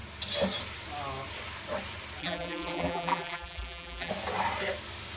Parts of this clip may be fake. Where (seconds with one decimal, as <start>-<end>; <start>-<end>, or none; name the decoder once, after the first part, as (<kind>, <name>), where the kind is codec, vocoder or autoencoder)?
2.2-4.1 (vocoder, BigVGAN v2)